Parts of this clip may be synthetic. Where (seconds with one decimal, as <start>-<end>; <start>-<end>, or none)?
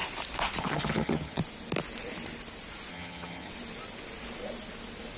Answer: 0.6-1.4; 2.9-3.5